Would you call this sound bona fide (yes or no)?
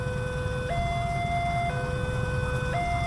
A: yes